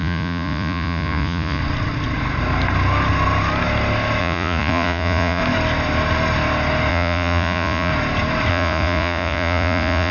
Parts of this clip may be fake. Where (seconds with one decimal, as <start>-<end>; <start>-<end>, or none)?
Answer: 0.0-1.6; 4.2-5.4; 6.9-7.9; 8.5-10.1